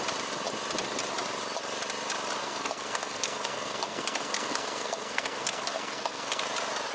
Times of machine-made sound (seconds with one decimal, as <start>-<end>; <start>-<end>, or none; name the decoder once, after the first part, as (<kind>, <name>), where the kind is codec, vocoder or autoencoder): 2.4-6.4 (codec, SNAC)